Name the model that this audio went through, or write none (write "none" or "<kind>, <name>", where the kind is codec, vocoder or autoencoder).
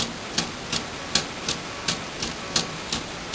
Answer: none